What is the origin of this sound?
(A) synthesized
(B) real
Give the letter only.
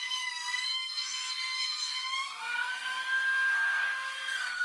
A